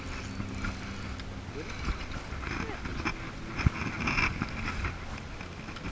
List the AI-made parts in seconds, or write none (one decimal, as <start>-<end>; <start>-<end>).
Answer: none